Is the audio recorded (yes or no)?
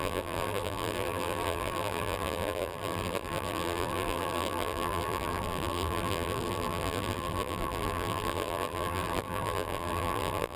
no